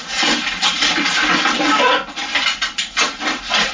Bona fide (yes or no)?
yes